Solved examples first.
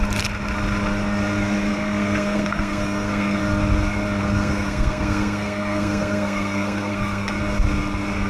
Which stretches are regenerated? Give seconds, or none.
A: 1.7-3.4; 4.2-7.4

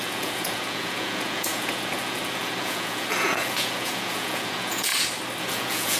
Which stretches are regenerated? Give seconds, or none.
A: 0.0-4.9; 5.4-6.0

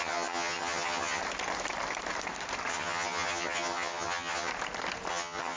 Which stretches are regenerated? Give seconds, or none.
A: 0.0-1.2; 2.7-4.5; 5.1-5.6

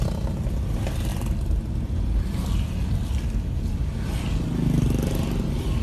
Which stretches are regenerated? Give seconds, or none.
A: none

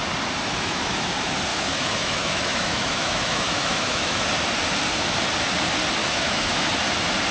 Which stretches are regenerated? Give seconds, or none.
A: 0.5-1.1; 1.5-4.2; 6.0-6.7

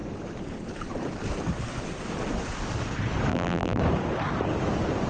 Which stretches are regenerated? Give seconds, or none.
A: 3.3-3.8

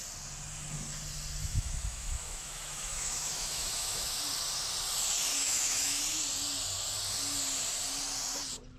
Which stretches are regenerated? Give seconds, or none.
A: 1.4-4.2; 5.3-6.0

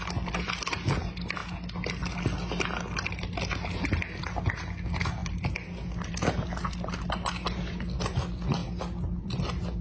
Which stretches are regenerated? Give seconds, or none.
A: 5.2-6.3; 8.6-9.4